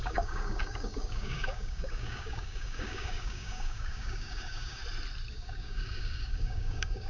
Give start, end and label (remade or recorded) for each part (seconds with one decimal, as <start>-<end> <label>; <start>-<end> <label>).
0.0-4.8 remade; 4.8-5.3 recorded; 5.3-7.1 remade